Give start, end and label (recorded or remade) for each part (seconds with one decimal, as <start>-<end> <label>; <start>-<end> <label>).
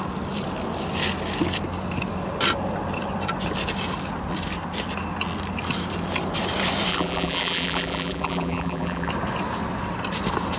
0.0-6.9 recorded; 6.9-9.1 remade; 9.1-10.6 recorded